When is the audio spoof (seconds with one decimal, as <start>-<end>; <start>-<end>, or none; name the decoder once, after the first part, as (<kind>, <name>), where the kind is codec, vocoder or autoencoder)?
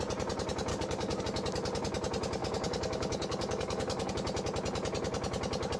0.7-1.2 (codec, DAC); 2.4-4.1